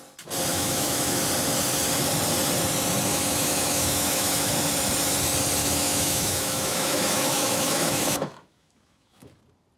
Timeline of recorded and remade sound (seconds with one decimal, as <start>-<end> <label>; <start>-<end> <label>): 0.0-0.5 recorded; 0.5-1.2 remade; 1.2-3.1 recorded; 3.1-4.5 remade; 4.5-5.6 recorded; 5.6-9.4 remade; 9.4-9.8 recorded